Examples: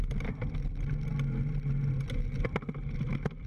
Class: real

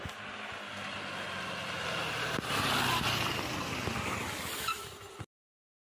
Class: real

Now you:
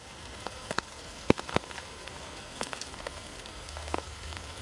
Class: fake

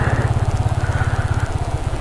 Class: real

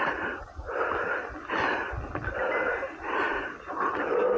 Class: real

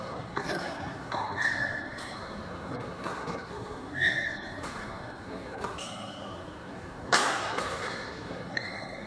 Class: fake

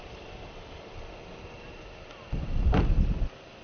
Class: real